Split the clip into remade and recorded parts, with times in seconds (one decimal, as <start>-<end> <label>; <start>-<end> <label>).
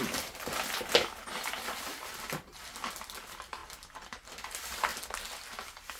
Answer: 0.0-6.0 recorded